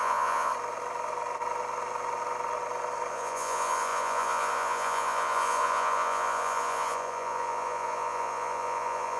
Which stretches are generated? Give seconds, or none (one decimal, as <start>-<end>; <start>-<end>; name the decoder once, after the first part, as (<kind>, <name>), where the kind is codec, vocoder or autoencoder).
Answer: 0.0-0.5 (vocoder, Vocos); 3.1-9.2